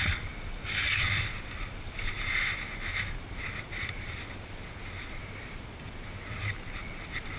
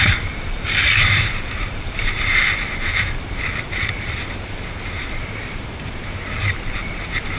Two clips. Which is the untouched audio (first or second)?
first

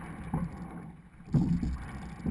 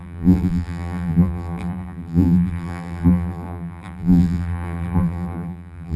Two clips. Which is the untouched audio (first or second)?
first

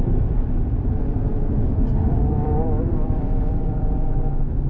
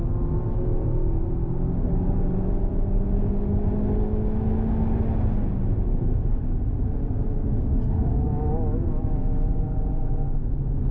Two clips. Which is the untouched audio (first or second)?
second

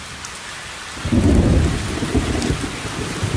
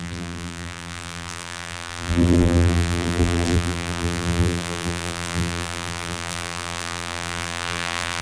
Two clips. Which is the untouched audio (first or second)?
first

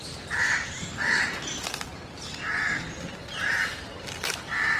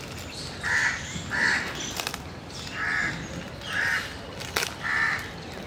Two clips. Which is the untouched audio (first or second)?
second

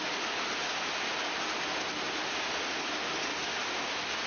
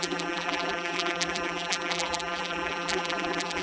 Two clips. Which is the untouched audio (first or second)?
first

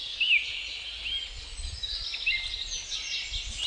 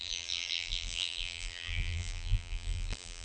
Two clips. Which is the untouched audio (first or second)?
first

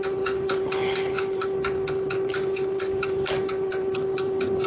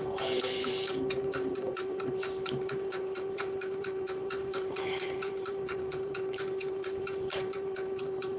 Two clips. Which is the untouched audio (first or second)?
first